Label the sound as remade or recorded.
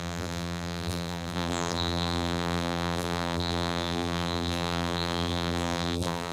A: remade